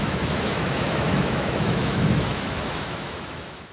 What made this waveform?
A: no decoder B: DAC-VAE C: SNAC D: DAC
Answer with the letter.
B